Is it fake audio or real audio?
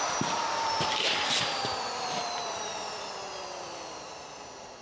fake